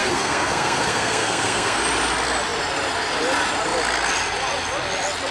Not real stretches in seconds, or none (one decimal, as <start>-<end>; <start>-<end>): 0.0-1.8